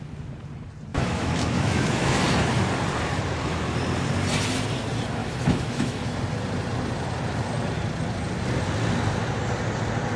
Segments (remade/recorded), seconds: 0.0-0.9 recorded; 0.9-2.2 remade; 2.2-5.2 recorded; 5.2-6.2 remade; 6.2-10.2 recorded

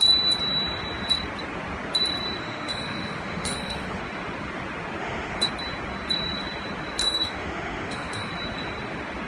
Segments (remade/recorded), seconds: 0.0-2.4 recorded; 2.4-4.0 remade; 4.0-5.0 recorded; 5.0-5.5 remade; 5.5-7.0 recorded; 7.0-8.3 remade; 8.3-9.3 recorded

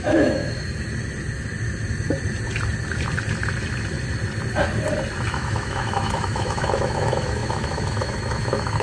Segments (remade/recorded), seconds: 0.0-0.4 remade; 0.4-5.3 recorded; 5.3-8.8 remade

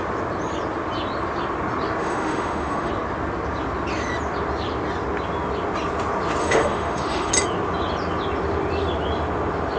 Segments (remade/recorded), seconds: 0.0-2.0 recorded; 2.0-2.9 remade; 2.9-6.4 recorded; 6.4-7.3 remade; 7.3-9.8 recorded

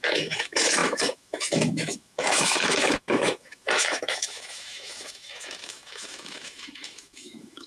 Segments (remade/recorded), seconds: 0.0-7.7 remade

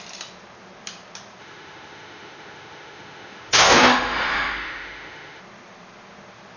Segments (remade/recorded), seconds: 0.0-1.4 recorded; 1.4-5.4 remade; 5.4-6.6 recorded

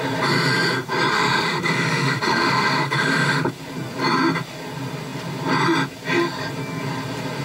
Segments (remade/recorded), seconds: 0.0-1.1 recorded; 1.1-3.5 remade; 3.5-7.4 recorded